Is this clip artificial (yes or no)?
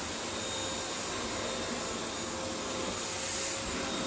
no